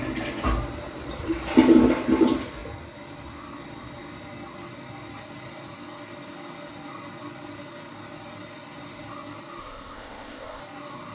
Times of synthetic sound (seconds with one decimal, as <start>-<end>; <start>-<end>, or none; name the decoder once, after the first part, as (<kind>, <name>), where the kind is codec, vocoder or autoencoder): 9.6-10.6 (codec, ZipCodec)